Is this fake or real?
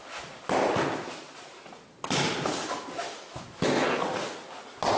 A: real